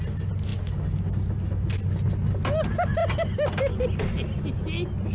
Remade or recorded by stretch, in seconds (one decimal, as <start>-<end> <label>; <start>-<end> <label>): 0.0-3.0 recorded; 3.0-4.0 remade; 4.0-5.1 recorded